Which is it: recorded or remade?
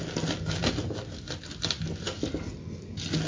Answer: recorded